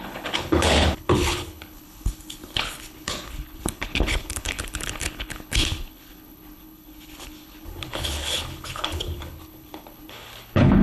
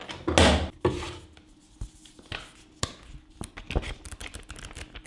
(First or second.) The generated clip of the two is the first